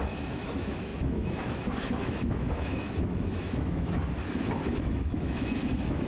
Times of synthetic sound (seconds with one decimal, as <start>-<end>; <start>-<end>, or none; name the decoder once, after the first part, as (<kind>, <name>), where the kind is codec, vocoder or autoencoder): 0.0-4.0 (autoencoder, DAC-VAE); 4.7-6.1